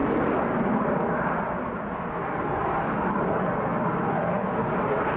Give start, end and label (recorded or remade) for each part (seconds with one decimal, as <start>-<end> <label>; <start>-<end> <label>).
0.0-5.2 recorded